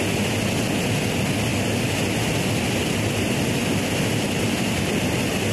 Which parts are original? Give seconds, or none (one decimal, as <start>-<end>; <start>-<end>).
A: 0.0-5.5